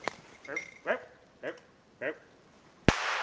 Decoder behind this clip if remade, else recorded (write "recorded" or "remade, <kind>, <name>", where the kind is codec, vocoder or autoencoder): recorded